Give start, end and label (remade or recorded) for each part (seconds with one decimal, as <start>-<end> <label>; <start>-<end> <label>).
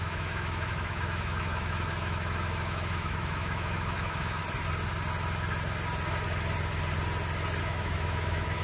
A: 0.0-4.4 remade; 4.4-7.6 recorded; 7.6-8.6 remade